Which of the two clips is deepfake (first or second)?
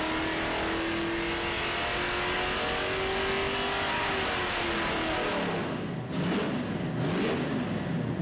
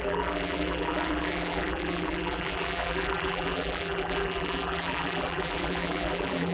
second